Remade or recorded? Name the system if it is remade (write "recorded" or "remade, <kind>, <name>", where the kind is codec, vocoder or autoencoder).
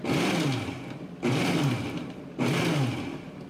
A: recorded